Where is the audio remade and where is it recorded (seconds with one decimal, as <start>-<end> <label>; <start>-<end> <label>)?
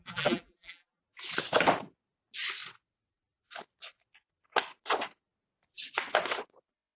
0.0-1.0 remade; 1.0-7.0 recorded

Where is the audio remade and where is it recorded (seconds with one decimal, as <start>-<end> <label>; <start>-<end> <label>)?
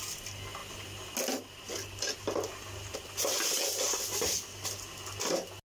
0.0-5.7 recorded